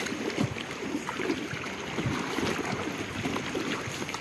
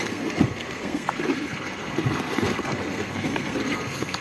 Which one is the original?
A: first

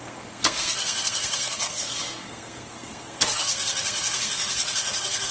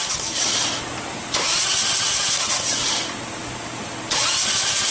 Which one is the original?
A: second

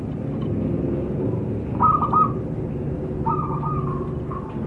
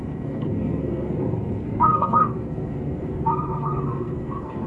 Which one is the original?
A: first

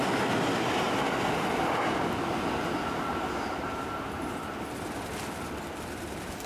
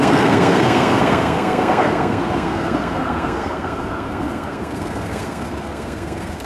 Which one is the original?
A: first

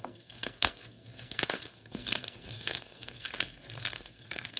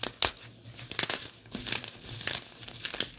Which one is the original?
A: second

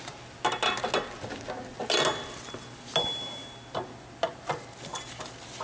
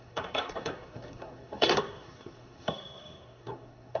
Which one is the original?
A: first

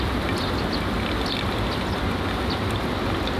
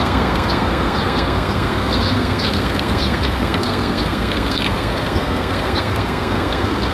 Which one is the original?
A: first